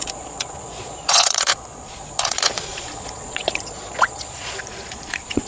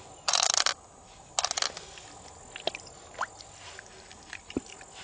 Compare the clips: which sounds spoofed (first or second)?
first